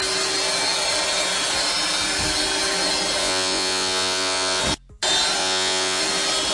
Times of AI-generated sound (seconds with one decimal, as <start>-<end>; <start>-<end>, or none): 3.2-4.6; 5.4-6.0